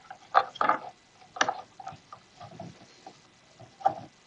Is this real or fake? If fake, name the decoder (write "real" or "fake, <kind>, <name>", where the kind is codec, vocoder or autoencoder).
real